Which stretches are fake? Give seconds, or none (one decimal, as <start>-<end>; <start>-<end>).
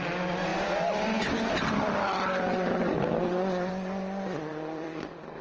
0.5-3.7; 4.5-5.4